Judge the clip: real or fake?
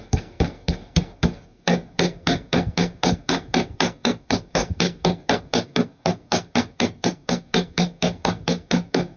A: fake